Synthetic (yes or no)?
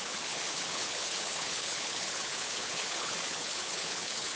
yes